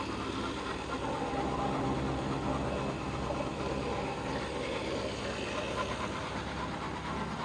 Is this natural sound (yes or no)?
yes